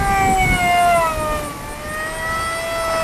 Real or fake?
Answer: real